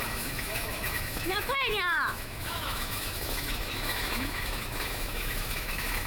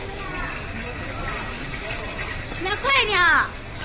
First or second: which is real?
second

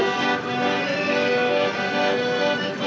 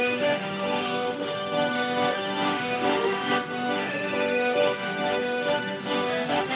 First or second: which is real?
first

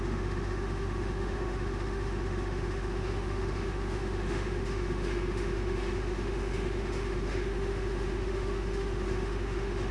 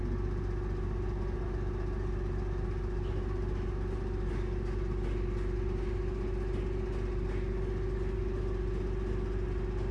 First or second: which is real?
second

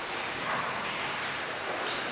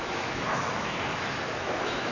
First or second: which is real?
first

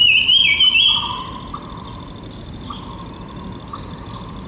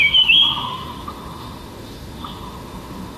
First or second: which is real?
first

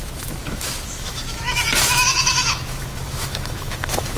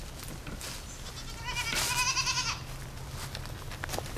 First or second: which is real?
second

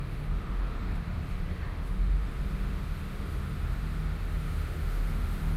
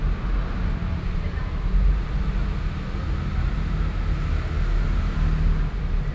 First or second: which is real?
second